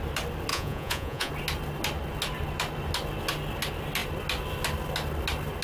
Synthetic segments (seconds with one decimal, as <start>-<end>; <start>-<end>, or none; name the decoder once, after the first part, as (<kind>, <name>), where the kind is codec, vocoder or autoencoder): 0.5-1.3 (vocoder, Vocos)